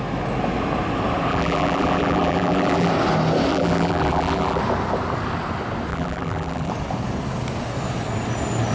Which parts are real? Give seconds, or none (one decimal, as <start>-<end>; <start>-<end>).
0.0-1.3; 2.9-3.5; 4.6-5.9; 6.7-8.7